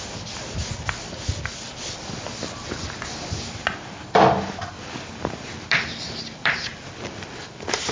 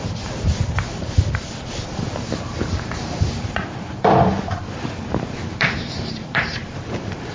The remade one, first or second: second